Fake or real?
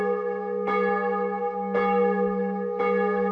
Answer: real